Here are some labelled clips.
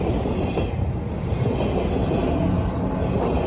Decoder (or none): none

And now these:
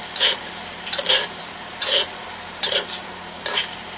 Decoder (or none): vocoder, BigVGAN v2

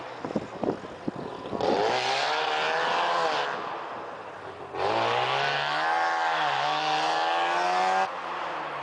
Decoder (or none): none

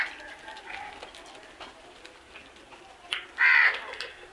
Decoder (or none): none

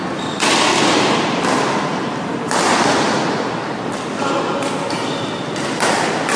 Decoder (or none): none